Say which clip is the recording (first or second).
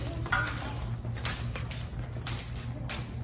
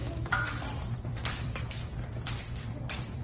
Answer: first